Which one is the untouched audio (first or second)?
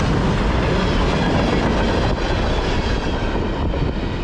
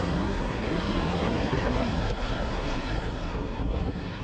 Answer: first